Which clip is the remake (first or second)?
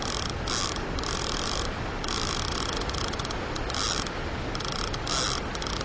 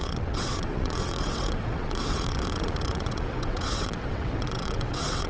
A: second